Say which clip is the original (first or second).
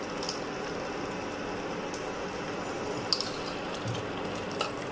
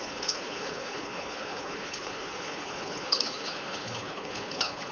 first